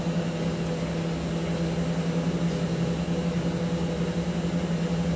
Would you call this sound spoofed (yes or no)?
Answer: no